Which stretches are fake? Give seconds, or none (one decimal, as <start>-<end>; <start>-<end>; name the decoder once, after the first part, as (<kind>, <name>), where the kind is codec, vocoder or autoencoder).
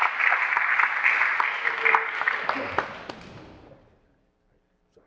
none